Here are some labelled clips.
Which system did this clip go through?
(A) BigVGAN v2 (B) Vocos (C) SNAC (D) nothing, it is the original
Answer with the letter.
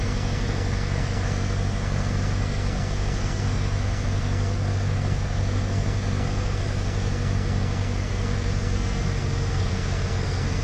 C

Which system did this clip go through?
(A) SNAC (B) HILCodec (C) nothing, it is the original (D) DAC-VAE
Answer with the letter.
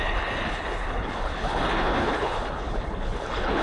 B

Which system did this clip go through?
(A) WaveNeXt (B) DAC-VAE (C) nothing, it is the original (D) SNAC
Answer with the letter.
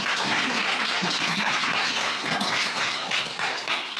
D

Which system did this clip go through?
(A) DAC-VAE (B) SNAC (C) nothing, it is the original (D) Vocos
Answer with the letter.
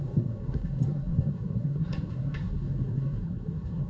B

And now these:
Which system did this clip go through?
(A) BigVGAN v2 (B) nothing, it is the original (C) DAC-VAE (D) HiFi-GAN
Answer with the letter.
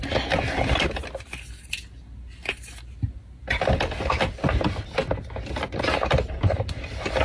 B